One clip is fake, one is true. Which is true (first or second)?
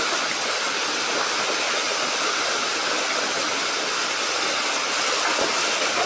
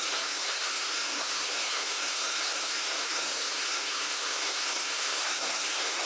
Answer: first